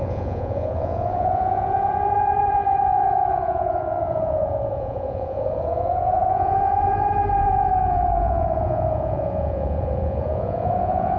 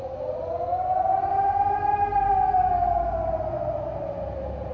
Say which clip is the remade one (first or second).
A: first